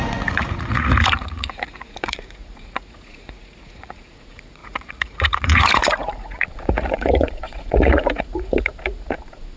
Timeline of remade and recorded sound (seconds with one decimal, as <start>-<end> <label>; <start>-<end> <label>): 0.0-9.6 remade